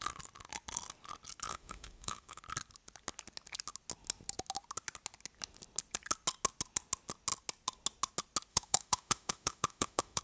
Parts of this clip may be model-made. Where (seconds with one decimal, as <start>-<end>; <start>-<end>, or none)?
1.5-2.4; 8.5-10.2

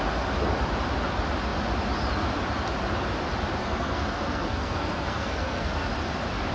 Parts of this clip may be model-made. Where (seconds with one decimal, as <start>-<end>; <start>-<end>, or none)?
3.6-5.7